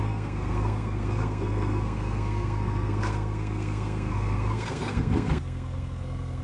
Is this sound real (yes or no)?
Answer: no